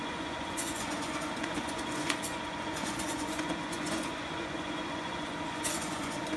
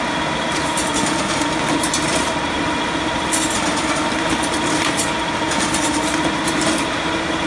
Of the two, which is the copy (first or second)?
first